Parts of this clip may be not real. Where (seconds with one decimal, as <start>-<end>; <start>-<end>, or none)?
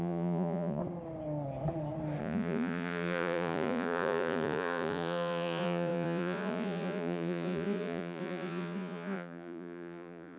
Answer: 0.0-0.8; 2.2-10.4